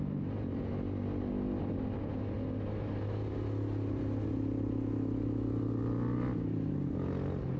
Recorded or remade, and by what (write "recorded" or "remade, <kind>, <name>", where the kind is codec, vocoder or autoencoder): recorded